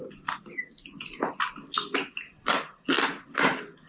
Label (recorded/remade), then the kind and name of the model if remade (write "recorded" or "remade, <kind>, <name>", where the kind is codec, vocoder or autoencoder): recorded